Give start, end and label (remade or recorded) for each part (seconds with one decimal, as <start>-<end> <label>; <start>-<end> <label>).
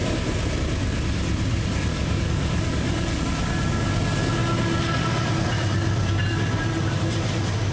0.0-1.9 recorded; 1.9-3.2 remade; 3.2-7.7 recorded